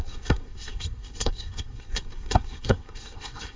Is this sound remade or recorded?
remade